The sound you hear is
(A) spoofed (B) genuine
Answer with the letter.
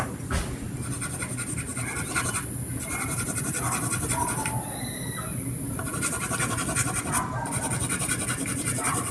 B